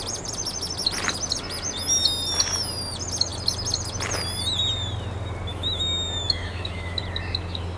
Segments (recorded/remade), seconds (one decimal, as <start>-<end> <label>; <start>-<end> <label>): 0.0-5.5 recorded; 5.5-7.0 remade; 7.0-7.8 recorded